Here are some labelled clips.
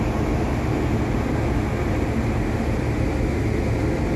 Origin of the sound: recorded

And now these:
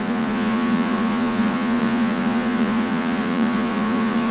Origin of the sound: remade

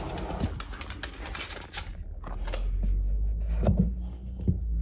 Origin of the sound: recorded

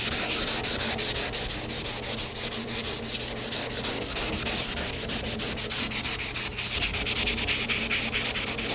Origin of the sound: recorded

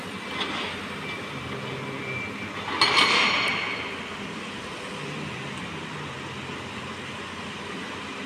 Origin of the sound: recorded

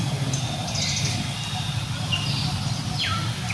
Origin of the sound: recorded